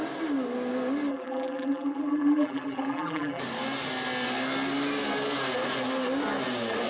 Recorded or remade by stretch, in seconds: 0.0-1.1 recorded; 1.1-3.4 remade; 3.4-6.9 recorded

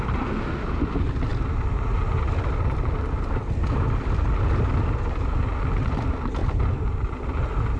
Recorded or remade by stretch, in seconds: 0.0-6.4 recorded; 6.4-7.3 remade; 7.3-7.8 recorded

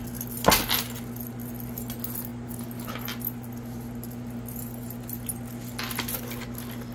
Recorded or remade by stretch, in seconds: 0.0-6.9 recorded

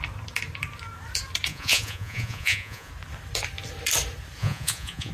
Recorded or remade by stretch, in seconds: 0.0-1.5 recorded; 1.5-2.9 remade; 2.9-4.4 recorded; 4.4-5.1 remade